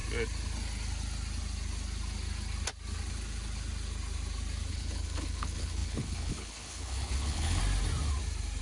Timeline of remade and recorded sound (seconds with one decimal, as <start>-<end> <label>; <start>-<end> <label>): 0.0-4.7 recorded; 4.7-7.6 remade; 7.6-8.6 recorded